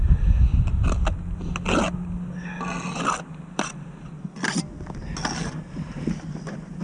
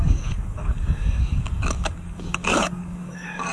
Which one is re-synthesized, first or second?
second